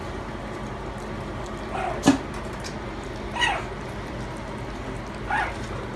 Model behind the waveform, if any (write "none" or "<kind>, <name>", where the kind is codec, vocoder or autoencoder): none